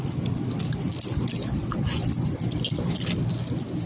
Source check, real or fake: real